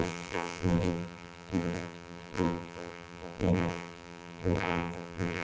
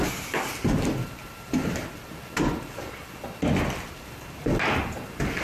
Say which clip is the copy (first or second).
first